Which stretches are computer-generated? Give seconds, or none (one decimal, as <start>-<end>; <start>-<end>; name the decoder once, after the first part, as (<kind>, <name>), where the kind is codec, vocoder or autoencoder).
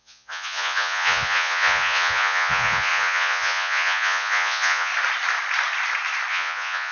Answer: 0.0-4.9 (vocoder, Vocos); 6.3-6.9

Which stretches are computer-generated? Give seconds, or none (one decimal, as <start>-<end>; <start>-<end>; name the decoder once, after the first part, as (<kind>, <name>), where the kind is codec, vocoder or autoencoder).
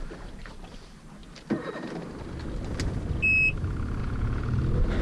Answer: 4.0-4.6 (vocoder, Vocos)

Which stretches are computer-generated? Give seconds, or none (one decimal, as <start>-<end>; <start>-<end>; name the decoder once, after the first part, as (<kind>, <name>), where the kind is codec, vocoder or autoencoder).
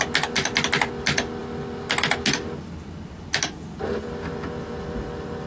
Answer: none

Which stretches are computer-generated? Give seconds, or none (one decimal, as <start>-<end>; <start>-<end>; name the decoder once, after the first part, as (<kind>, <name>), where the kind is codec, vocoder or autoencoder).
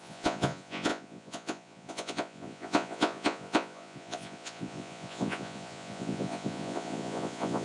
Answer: 0.0-7.6 (vocoder, Vocos)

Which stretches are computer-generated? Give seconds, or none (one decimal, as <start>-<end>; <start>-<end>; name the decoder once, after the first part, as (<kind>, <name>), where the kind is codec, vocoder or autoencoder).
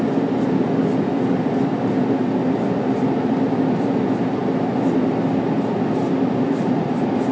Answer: none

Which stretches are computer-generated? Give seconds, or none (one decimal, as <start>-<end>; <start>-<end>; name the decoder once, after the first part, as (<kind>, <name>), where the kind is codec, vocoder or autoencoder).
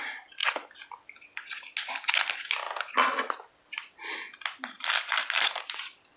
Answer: none